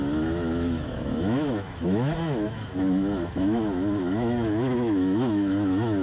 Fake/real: fake